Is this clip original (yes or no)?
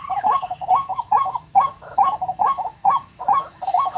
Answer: no